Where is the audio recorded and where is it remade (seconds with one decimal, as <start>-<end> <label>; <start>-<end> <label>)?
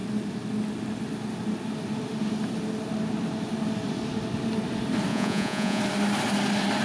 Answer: 0.0-5.1 recorded; 5.1-5.8 remade; 5.8-6.8 recorded